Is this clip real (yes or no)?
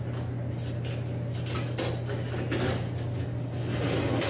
yes